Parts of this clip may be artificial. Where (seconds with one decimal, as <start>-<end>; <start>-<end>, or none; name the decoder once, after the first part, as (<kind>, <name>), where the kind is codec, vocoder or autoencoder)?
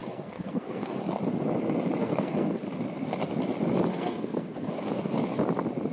0.0-1.0 (codec, SNAC); 2.0-2.6; 3.9-4.7